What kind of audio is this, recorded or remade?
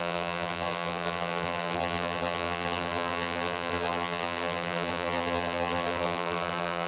remade